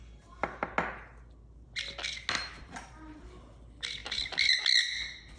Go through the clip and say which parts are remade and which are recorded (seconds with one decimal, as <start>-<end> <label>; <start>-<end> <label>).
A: 0.0-4.0 recorded; 4.0-4.6 remade; 4.6-5.4 recorded